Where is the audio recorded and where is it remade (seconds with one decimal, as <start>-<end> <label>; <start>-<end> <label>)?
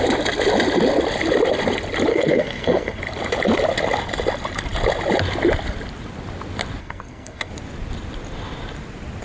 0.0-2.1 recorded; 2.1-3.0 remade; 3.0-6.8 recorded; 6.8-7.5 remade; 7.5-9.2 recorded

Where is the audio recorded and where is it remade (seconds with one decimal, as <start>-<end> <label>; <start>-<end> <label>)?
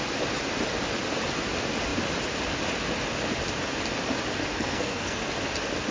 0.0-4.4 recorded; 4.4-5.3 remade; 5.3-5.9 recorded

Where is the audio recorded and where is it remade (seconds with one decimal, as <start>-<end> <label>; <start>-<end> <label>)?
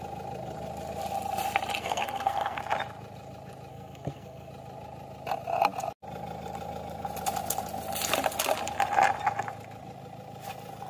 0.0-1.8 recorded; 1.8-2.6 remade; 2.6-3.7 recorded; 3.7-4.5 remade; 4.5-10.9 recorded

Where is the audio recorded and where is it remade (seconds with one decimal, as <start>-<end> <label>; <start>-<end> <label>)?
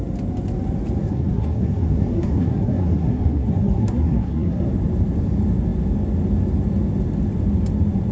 0.0-1.0 recorded; 1.0-4.7 remade; 4.7-8.1 recorded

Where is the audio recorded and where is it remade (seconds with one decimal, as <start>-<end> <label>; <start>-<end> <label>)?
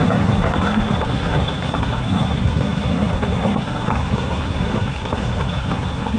0.0-6.2 remade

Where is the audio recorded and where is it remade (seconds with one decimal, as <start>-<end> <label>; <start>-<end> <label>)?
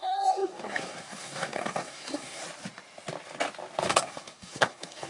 0.0-2.4 remade; 2.4-3.9 recorded; 3.9-5.1 remade